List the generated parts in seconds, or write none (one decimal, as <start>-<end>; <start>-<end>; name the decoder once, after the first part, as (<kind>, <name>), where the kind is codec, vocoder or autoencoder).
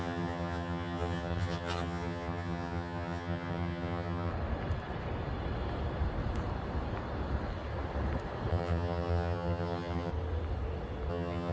0.0-4.3 (vocoder, HiFi-GAN); 8.5-10.1; 11.1-11.5